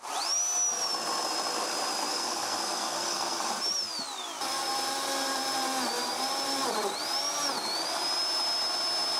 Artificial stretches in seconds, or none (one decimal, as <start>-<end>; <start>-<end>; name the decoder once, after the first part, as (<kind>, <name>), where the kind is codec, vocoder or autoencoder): 2.1-3.5 (codec, SNAC)